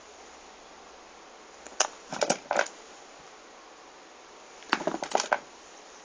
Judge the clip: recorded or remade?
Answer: recorded